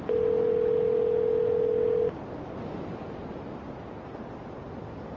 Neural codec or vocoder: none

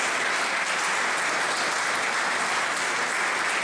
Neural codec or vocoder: none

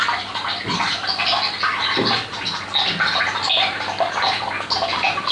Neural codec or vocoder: none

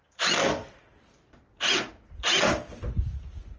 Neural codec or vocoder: none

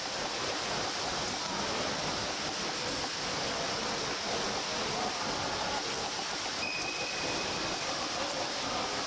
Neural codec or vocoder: none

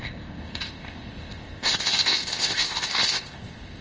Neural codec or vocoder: codec, ZipCodec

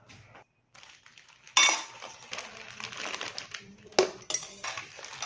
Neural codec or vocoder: none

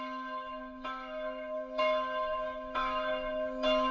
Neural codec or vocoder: autoencoder, DAC-VAE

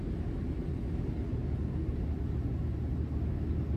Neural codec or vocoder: none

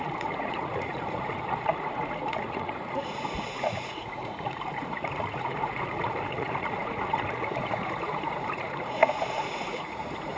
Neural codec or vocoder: vocoder, Vocos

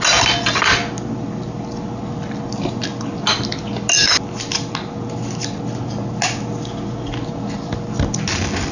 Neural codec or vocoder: none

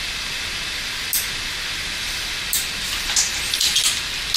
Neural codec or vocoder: none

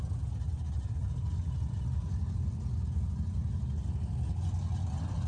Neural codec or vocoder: none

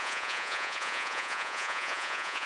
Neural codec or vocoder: vocoder, Vocos